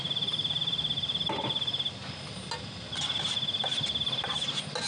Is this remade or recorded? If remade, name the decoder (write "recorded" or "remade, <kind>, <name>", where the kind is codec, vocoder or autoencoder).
recorded